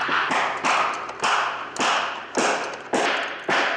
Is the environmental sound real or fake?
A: real